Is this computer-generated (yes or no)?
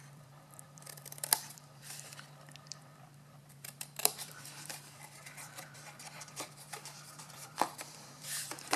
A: yes